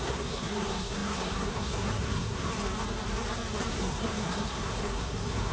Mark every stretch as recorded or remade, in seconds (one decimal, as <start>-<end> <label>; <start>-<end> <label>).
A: 0.0-2.5 remade; 2.5-3.7 recorded; 3.7-5.5 remade